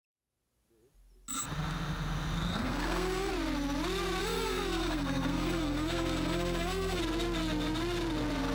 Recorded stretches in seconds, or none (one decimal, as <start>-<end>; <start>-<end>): 0.0-2.5; 3.3-4.2; 7.0-8.5